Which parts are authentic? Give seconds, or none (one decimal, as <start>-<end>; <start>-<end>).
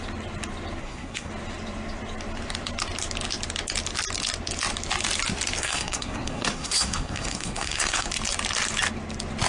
0.0-0.8; 1.3-5.6; 8.1-9.5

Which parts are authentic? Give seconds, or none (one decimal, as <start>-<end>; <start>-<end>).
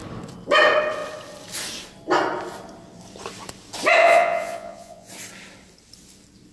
0.0-4.0; 5.1-6.5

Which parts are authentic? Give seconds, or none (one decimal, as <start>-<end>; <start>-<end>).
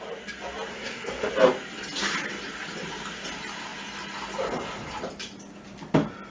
0.0-0.7; 1.3-6.3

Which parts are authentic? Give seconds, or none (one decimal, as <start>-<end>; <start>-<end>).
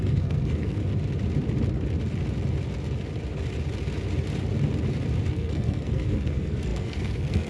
0.8-5.3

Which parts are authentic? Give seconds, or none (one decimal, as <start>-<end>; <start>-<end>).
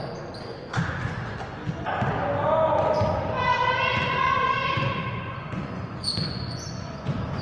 0.0-0.5; 1.2-3.9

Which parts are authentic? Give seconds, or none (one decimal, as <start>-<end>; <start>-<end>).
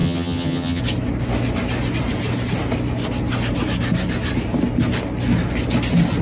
0.8-6.2